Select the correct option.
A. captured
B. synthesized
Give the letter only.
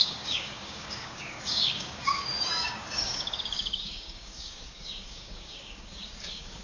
B